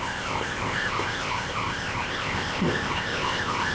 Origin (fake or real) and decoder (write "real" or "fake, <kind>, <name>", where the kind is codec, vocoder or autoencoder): fake, codec, ZipCodec